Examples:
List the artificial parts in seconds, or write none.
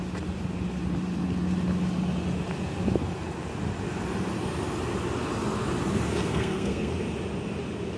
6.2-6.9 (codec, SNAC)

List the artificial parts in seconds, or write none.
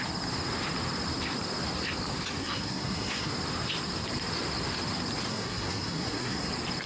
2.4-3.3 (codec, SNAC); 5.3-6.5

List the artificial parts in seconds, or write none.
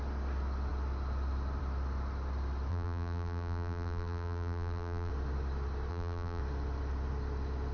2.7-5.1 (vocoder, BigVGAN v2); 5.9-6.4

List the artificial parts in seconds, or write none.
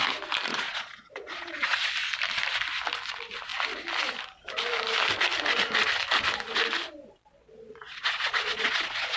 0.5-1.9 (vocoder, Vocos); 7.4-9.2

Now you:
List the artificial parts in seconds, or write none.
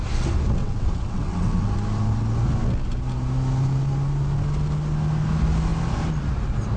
0.6-1.7 (vocoder, WaveNeXt)